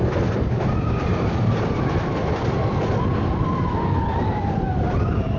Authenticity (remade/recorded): recorded